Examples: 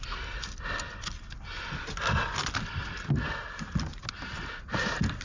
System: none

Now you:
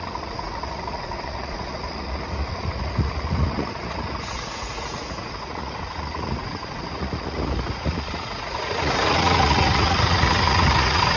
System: vocoder, Vocos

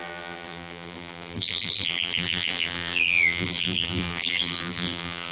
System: vocoder, BigVGAN v2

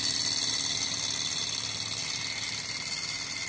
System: none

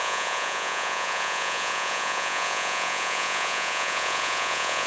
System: vocoder, Vocos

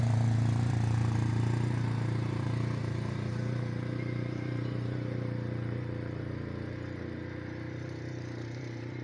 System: vocoder, BigVGAN v2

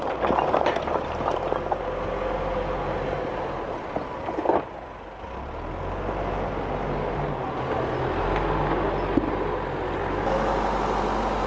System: none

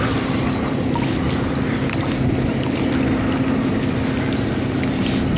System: none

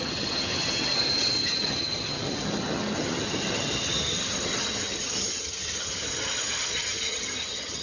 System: vocoder, HiFi-GAN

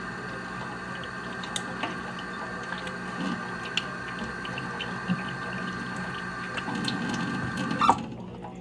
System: none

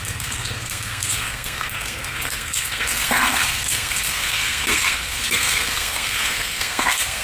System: codec, SNAC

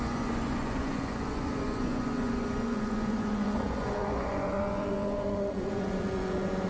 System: vocoder, Vocos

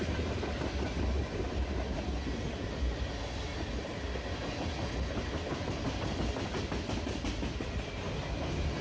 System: none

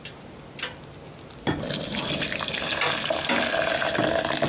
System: none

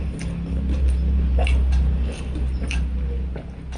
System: none